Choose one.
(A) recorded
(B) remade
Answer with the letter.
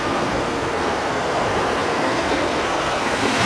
B